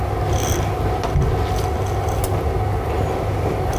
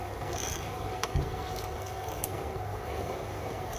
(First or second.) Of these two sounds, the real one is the first